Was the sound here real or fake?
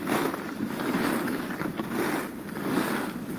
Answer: real